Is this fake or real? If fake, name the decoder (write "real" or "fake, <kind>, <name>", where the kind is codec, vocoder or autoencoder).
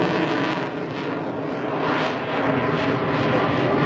real